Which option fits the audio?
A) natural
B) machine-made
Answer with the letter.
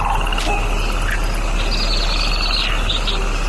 A